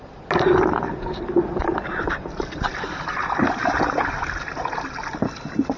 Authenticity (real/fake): real